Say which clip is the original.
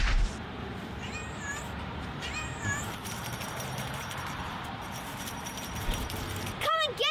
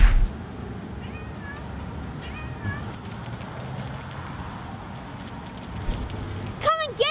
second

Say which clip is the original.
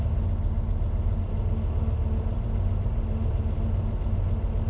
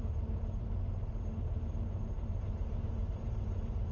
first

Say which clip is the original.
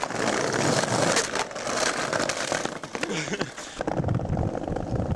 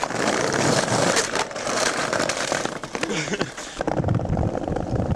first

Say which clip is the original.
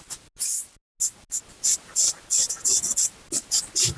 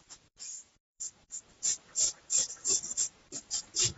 first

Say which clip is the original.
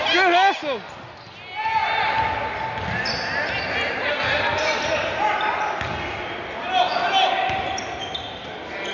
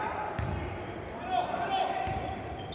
first